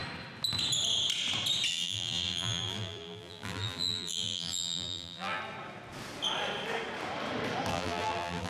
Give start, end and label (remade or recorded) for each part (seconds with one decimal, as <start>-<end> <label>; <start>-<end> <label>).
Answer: 0.0-1.7 recorded; 1.7-5.4 remade; 5.4-7.7 recorded; 7.7-8.5 remade